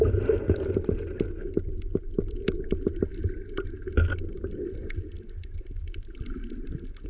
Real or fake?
real